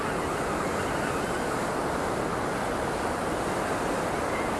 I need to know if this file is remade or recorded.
recorded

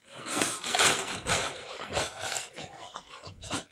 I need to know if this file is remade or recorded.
remade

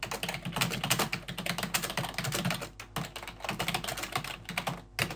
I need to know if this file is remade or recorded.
recorded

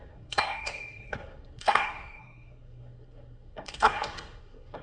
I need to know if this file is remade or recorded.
remade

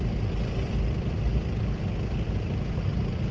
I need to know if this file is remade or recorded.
recorded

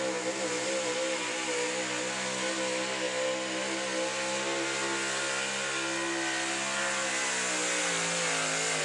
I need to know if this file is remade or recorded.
recorded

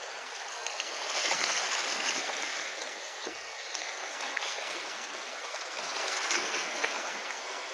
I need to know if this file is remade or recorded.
remade